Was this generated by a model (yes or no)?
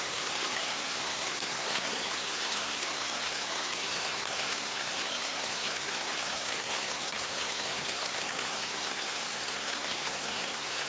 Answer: yes